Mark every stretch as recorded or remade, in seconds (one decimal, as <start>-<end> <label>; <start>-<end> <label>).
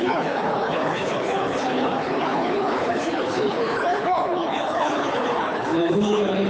0.0-6.5 remade